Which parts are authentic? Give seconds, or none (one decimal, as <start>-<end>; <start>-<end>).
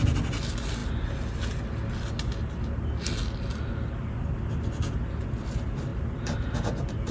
0.0-5.9; 6.5-7.1